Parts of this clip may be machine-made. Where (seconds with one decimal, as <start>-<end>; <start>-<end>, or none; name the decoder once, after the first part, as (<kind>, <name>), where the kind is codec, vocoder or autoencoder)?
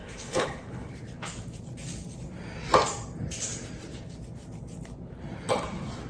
0.0-0.9 (codec, HILCodec)